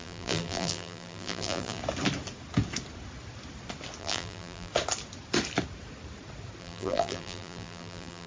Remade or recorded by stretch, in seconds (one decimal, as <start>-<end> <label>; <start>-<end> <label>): 0.0-1.8 remade; 1.8-4.0 recorded; 4.0-4.7 remade; 4.7-6.6 recorded; 6.6-8.3 remade